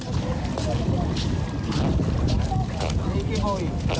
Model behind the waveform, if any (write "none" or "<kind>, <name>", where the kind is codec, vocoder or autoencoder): none